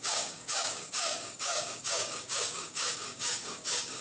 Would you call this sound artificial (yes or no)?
yes